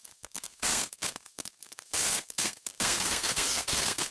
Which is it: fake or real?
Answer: fake